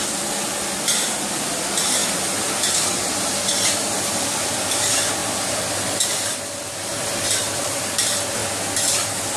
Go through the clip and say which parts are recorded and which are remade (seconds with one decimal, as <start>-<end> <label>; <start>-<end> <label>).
0.0-2.0 remade; 2.0-2.6 recorded; 2.6-8.4 remade; 8.4-8.9 recorded; 8.9-9.4 remade

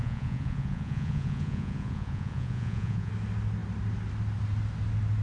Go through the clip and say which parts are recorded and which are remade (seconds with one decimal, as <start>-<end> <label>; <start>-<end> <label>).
0.0-3.1 remade; 3.1-5.2 recorded